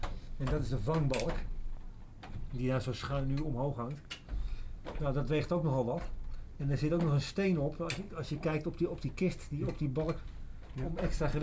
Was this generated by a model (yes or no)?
no